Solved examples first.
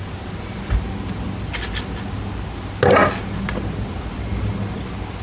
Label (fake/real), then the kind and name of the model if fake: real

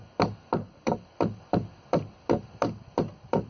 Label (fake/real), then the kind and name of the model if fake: real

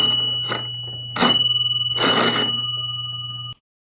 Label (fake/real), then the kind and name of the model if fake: real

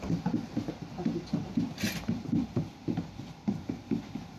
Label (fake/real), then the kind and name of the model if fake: real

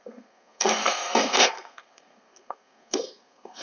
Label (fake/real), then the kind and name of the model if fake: fake, codec, SNAC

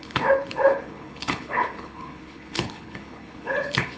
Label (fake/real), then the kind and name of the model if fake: fake, codec, HILCodec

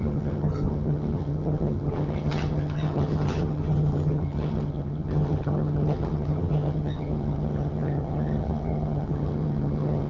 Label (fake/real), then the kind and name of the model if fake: fake, vocoder, HiFi-GAN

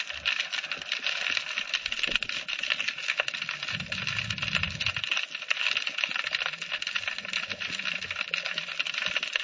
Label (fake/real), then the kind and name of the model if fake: real